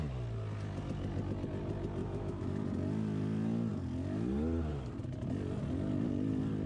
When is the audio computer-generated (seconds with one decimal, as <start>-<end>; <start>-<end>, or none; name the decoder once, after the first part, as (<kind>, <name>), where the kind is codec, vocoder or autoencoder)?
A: 2.0-2.6 (autoencoder, DAC-VAE)